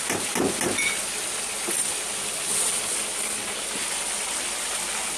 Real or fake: real